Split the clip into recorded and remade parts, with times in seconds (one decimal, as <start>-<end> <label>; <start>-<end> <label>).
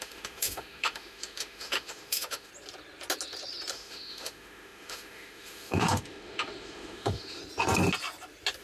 0.0-2.5 remade; 2.5-3.7 recorded; 3.7-7.4 remade; 7.4-8.6 recorded